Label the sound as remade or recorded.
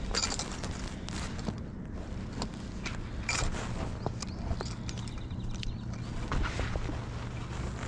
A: recorded